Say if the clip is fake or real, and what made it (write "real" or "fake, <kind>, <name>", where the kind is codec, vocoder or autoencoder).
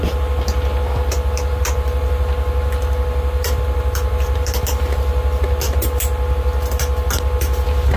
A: real